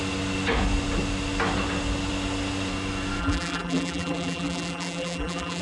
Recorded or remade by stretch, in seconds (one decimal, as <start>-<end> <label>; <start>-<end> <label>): 0.0-3.2 recorded; 3.2-5.6 remade